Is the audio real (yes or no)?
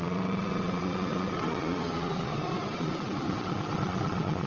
no